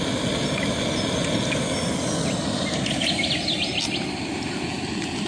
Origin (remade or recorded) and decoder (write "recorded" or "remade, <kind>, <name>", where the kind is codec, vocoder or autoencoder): recorded